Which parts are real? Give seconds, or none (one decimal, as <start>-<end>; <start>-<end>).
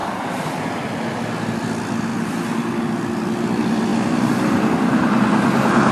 0.7-3.9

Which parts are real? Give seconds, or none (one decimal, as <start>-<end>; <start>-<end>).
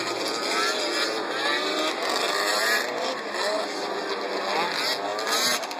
0.0-2.5; 3.4-5.1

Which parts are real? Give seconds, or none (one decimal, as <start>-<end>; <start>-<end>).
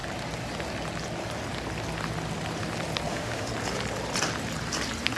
0.0-3.1; 3.5-5.2